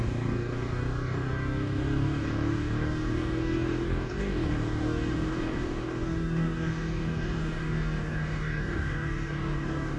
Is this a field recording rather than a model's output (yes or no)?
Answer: no